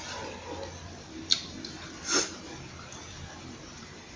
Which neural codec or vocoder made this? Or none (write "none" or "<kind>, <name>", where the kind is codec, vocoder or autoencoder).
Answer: none